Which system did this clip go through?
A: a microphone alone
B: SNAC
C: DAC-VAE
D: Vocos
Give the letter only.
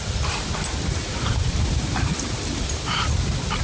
A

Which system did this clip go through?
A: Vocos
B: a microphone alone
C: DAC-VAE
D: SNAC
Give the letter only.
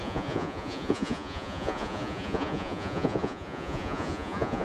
A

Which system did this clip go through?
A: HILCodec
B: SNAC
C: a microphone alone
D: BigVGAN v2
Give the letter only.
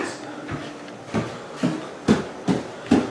C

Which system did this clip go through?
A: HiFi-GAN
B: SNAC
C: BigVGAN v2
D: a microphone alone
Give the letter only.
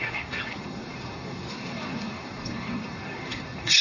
B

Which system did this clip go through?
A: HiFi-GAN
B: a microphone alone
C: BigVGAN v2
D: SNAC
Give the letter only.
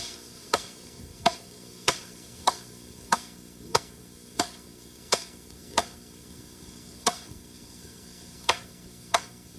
D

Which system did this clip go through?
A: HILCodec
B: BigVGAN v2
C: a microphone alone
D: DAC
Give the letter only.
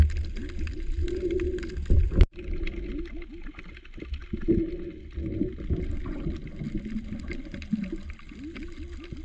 C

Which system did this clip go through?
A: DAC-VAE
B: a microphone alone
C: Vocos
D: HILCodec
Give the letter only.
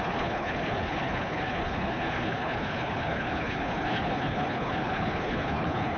D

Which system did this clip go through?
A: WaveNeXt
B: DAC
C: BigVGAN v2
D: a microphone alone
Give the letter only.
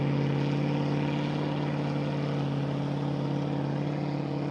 D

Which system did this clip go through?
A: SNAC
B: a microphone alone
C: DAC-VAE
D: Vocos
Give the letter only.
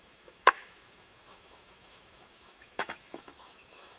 C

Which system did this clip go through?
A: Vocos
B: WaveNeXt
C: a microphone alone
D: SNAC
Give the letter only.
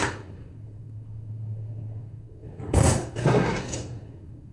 D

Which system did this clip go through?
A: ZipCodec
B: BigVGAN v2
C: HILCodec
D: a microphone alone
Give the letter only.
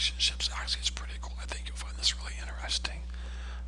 D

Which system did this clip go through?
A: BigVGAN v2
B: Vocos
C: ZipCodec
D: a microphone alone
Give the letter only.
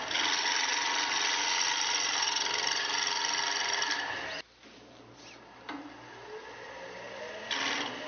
D